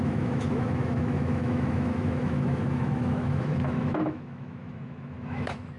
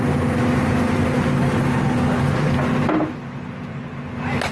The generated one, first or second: first